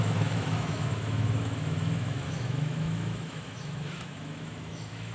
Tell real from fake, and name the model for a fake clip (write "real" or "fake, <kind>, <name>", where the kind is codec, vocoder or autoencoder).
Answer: fake, autoencoder, DAC-VAE